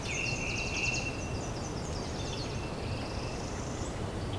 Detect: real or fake real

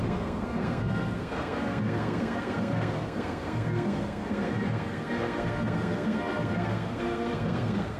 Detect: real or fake fake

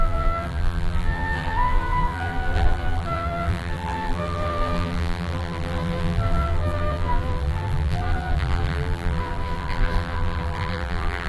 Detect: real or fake fake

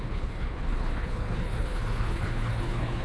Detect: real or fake fake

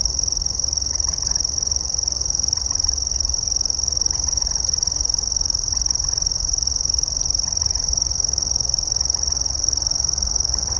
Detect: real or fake fake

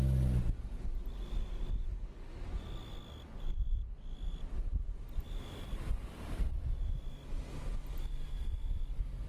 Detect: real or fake real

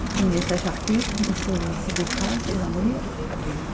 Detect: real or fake real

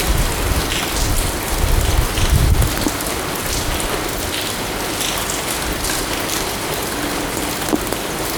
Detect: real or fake real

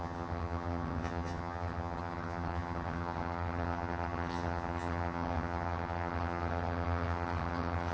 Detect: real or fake fake